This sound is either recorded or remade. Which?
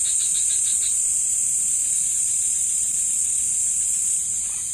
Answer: recorded